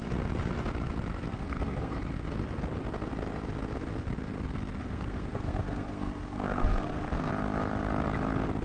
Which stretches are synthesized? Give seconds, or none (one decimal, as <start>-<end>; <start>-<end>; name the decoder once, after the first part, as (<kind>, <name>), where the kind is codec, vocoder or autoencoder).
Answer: 1.3-2.0 (codec, SNAC); 4.8-7.3